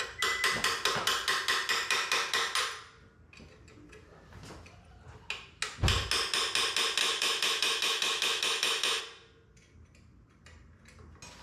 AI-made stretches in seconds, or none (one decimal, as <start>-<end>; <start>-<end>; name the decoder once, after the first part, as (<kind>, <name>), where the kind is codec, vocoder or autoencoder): 7.0-9.0 (autoencoder, DAC-VAE)

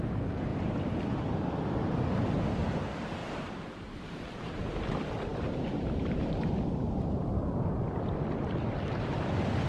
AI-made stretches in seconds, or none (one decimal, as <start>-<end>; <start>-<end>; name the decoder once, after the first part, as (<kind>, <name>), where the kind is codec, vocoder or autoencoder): 3.2-4.6 (vocoder, BigVGAN v2); 5.3-6.5